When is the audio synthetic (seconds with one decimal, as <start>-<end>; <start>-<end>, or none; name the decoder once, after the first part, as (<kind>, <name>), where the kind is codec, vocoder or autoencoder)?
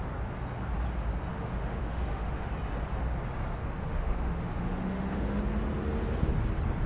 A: 1.3-2.5 (autoencoder, DAC-VAE); 3.6-5.4